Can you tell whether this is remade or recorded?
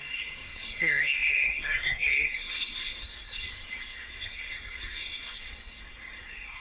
remade